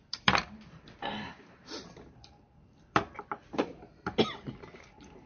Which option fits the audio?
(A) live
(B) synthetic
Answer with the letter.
B